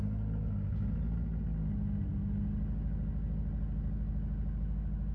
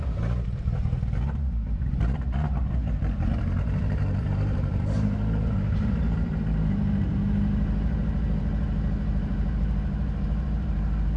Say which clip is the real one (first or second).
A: first